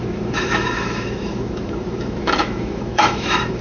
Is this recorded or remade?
remade